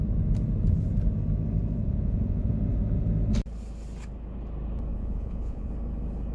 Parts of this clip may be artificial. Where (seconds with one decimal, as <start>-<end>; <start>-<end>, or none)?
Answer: 1.8-2.5; 4.9-5.7

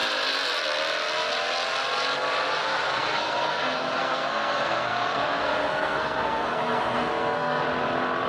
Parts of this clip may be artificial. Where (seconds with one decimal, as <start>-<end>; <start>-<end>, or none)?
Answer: 2.6-7.6

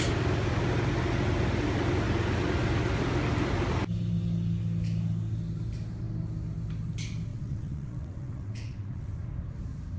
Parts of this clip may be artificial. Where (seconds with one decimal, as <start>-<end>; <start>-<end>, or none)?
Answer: 7.3-9.1

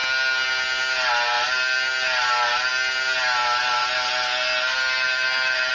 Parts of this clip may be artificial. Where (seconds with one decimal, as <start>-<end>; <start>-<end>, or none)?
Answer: none

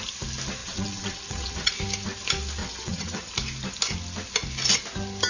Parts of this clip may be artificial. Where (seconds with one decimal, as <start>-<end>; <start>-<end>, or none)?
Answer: 0.6-1.7; 2.6-3.3

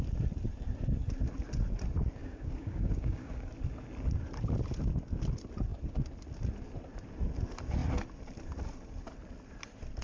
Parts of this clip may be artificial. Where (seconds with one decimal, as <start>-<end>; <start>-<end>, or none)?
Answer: 2.2-3.5

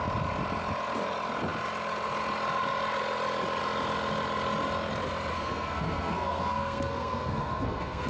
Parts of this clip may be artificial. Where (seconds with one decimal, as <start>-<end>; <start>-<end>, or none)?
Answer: 5.3-8.1

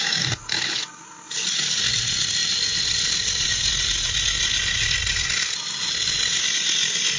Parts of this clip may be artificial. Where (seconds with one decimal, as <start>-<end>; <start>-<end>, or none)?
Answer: 0.0-1.0